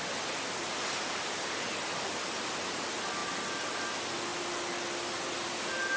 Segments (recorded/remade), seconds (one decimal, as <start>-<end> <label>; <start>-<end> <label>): 0.0-3.2 recorded; 3.2-3.9 remade; 3.9-6.0 recorded